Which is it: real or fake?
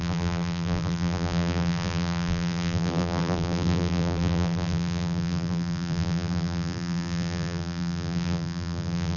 fake